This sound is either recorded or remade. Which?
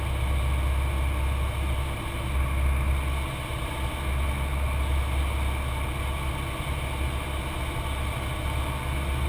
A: recorded